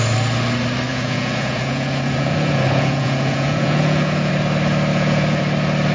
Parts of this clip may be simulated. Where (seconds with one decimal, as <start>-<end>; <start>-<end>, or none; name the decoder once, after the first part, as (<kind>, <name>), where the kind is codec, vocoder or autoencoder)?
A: 0.9-4.3 (vocoder, Vocos); 4.9-5.4